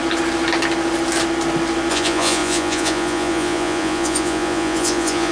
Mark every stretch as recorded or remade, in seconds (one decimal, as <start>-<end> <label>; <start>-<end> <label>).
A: 0.0-1.9 recorded; 1.9-5.3 remade